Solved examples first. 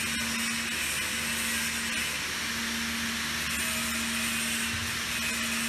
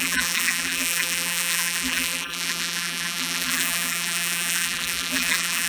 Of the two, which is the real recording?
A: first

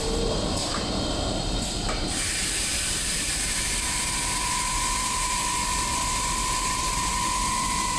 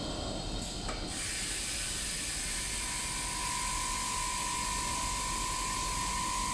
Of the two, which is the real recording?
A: second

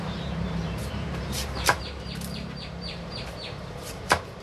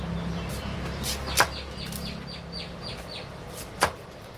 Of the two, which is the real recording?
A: second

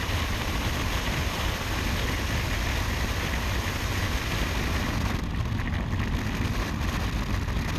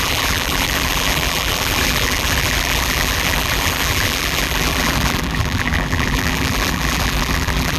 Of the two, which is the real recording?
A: first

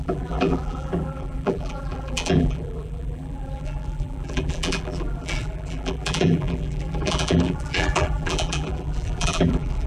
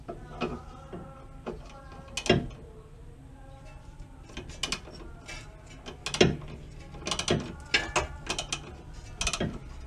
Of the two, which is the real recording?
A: second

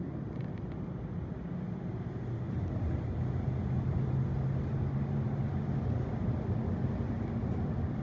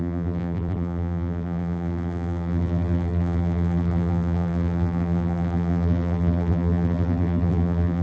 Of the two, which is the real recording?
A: first